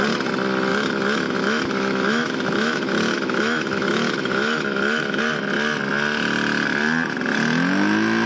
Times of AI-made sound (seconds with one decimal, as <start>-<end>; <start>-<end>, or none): 0.7-5.2

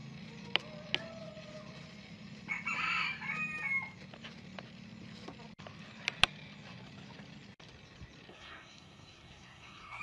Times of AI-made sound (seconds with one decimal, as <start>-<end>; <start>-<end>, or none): 8.3-10.0